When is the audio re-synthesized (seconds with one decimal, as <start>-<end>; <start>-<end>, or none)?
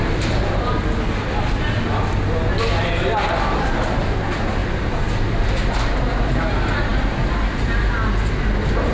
none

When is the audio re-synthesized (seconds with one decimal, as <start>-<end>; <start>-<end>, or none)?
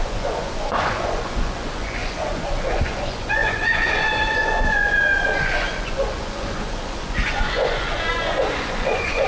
0.0-9.3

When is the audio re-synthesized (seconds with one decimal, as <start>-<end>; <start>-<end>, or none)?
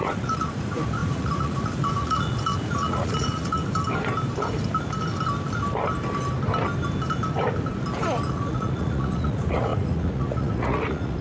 0.0-3.6; 8.3-11.2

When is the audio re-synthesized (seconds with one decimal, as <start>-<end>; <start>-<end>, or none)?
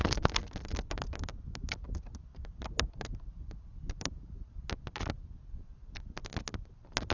none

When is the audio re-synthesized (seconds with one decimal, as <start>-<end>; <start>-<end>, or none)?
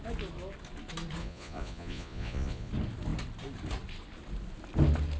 1.2-2.7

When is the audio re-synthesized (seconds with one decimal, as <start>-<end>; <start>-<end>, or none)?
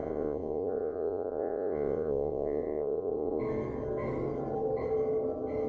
0.0-3.4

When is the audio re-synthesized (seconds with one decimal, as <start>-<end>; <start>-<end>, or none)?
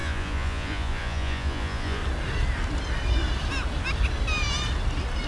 0.0-2.0